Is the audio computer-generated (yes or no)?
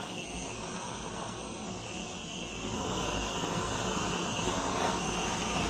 yes